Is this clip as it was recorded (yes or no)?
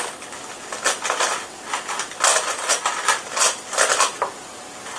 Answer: yes